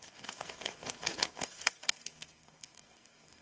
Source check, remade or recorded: remade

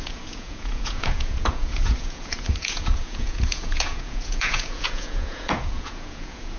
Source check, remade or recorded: remade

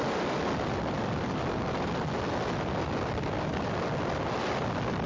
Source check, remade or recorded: recorded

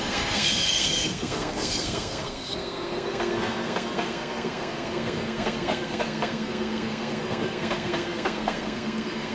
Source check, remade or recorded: remade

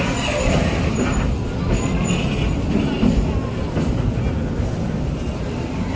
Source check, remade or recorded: recorded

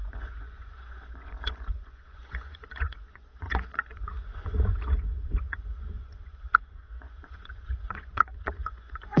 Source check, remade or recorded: remade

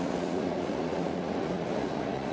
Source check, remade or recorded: remade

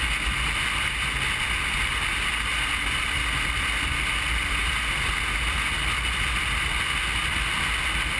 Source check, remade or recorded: recorded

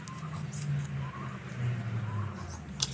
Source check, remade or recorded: recorded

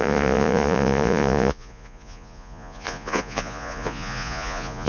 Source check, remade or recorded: remade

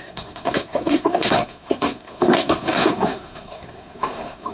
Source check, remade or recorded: remade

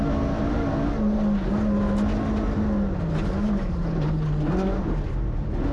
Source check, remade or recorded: recorded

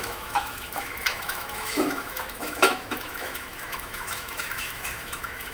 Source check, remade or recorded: remade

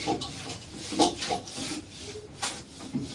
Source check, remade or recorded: recorded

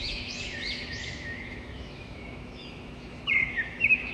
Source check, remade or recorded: remade